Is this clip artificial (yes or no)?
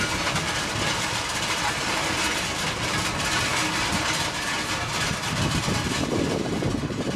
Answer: no